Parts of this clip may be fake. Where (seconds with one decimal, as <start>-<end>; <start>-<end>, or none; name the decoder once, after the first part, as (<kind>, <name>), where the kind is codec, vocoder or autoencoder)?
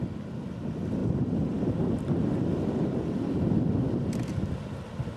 none